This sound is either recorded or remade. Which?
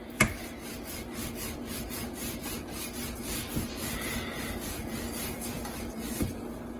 recorded